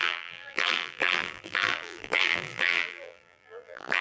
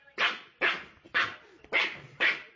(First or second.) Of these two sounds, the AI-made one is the first